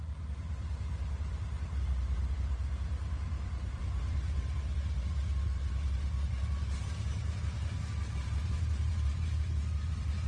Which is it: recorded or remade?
remade